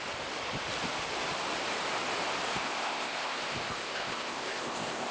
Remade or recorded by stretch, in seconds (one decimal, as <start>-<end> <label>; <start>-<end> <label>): 0.0-2.5 recorded; 2.5-5.1 remade

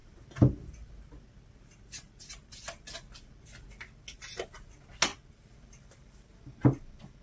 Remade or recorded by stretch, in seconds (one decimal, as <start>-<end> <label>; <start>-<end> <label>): 0.0-7.2 recorded

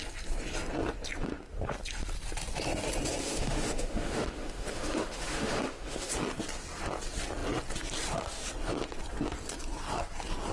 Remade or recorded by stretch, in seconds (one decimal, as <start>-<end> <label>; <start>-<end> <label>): 0.0-3.2 recorded; 3.2-6.1 remade; 6.1-10.5 recorded

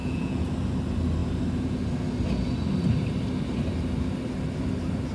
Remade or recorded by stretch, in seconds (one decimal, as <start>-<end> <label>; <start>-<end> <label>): 0.0-0.5 remade; 0.5-5.1 recorded

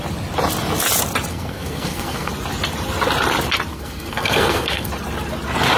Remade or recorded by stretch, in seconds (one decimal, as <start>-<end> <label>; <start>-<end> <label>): 0.0-1.3 recorded; 1.3-2.3 remade; 2.3-3.7 recorded; 3.7-4.9 remade; 4.9-5.8 recorded

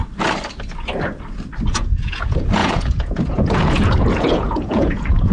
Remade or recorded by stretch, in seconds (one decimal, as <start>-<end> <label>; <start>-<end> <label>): 0.0-1.7 recorded; 1.7-5.3 remade

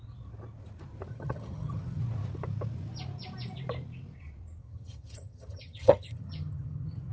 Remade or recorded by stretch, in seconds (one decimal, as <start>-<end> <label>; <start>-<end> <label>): 0.0-1.1 recorded; 1.1-2.0 remade; 2.0-4.6 recorded; 4.6-7.1 remade

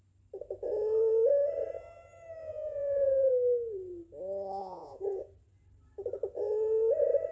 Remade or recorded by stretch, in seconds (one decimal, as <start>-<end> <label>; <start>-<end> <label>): 0.0-2.4 recorded; 2.4-3.3 remade; 3.3-4.6 recorded; 4.6-5.3 remade; 5.3-7.3 recorded